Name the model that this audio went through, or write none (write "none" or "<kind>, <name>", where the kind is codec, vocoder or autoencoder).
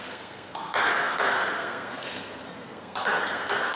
codec, SNAC